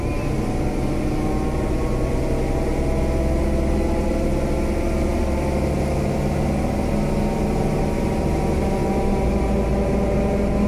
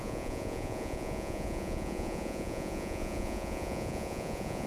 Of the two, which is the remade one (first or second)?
second